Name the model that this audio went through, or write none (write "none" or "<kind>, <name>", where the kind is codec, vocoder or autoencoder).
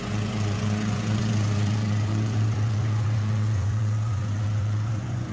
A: vocoder, Vocos